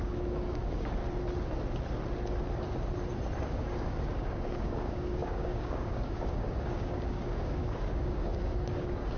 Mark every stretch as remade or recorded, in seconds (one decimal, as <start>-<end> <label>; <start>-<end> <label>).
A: 0.0-1.0 remade; 1.0-3.4 recorded; 3.4-9.2 remade